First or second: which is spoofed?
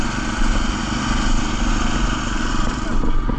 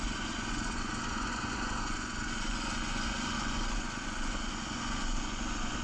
second